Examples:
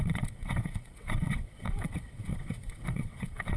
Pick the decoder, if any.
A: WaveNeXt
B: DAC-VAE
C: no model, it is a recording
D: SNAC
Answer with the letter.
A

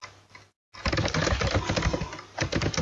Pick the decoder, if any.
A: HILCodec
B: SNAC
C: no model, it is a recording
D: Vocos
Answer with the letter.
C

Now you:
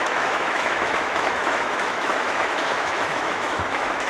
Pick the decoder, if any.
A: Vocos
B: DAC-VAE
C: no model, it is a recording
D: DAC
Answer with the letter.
B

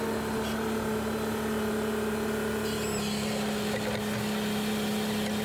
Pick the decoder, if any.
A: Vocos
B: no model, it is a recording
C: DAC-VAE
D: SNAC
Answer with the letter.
B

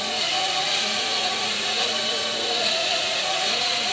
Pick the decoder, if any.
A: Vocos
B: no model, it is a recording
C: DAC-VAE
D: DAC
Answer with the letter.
A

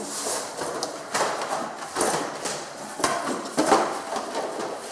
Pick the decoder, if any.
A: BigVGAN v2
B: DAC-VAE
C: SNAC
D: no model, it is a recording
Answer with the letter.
D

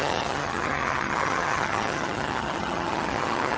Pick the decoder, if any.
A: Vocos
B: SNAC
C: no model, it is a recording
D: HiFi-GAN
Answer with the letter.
D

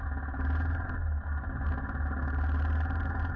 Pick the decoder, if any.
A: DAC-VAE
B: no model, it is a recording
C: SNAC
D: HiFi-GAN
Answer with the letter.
B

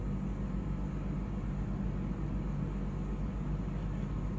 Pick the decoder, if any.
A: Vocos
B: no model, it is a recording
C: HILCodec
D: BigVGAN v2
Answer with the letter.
B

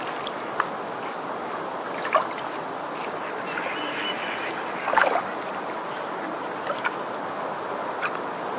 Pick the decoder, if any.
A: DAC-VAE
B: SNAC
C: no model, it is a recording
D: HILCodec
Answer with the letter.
C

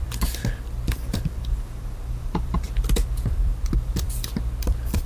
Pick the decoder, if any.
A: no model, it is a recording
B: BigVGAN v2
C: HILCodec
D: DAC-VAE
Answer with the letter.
B